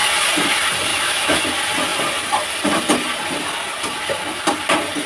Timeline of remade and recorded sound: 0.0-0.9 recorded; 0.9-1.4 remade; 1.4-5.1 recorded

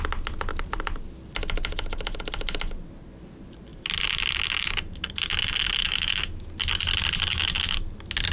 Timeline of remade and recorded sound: 0.0-5.8 recorded; 5.8-6.5 remade; 6.5-7.3 recorded; 7.3-7.8 remade; 7.8-8.3 recorded

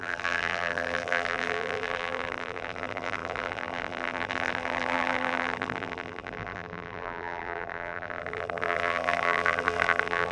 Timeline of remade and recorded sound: 0.0-10.3 remade

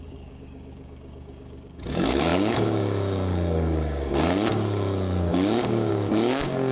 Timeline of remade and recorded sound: 0.0-6.7 remade

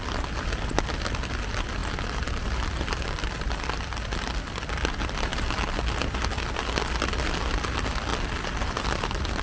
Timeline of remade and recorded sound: 0.0-9.4 recorded